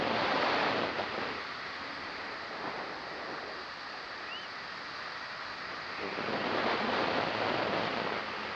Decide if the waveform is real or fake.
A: real